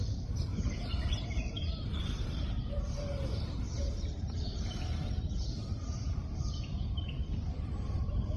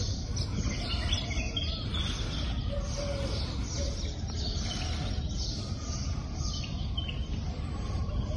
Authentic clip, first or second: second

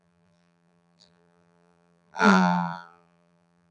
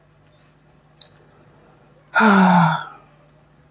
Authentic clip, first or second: second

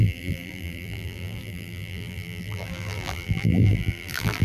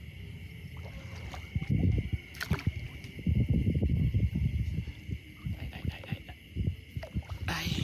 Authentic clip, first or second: second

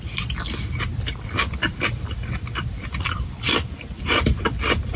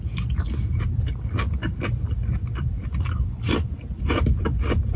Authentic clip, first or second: second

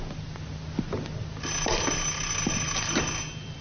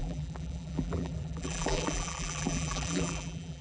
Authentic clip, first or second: first